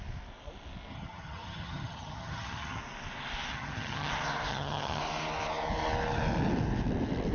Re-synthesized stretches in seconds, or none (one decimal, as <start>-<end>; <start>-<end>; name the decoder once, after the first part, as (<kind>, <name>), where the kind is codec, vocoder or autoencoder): 0.9-2.8 (vocoder, HiFi-GAN); 3.5-4.1; 4.5-5.0